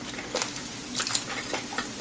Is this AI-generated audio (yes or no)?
no